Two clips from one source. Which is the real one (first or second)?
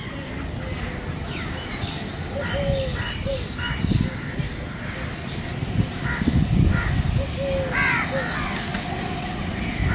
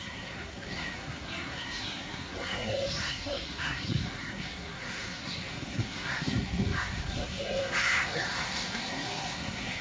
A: first